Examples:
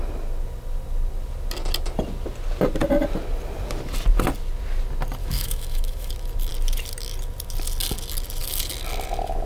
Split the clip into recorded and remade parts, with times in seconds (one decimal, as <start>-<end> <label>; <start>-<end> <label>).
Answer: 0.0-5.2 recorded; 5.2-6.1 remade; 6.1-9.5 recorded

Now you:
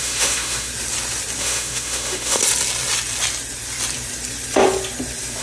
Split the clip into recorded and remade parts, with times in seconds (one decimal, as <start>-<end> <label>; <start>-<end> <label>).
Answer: 0.0-0.7 remade; 0.7-1.4 recorded; 1.4-2.4 remade; 2.4-5.4 recorded

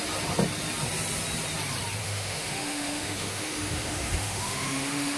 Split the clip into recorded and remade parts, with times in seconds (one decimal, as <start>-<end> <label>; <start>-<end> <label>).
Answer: 0.0-2.0 recorded; 2.0-5.2 remade